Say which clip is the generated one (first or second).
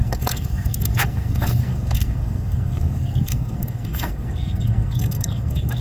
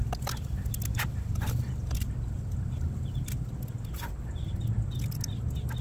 first